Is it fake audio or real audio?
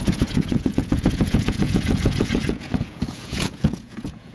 fake